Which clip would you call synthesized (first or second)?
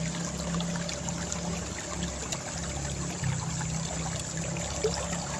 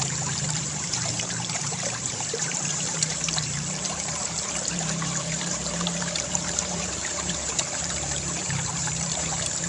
second